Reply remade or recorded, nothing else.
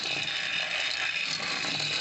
recorded